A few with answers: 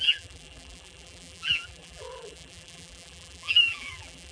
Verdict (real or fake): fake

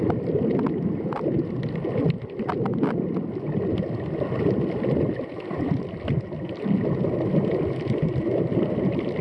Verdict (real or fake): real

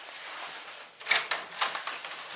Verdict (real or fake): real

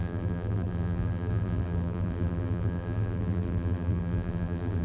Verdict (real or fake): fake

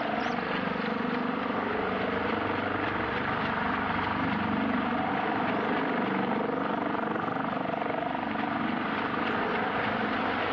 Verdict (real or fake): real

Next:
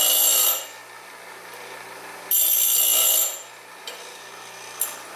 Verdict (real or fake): real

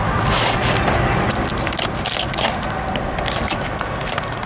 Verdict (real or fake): real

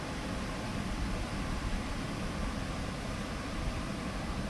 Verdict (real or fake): fake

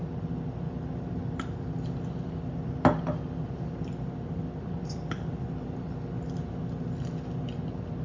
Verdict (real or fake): real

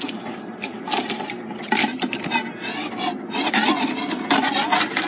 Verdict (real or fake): real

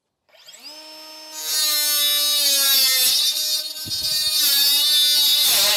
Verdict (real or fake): real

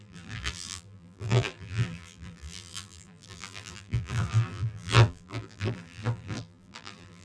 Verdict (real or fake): fake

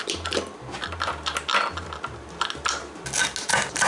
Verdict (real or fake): real